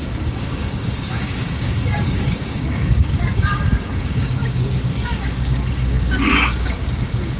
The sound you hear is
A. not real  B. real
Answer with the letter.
A